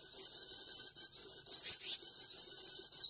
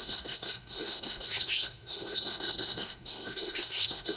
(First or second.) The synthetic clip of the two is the second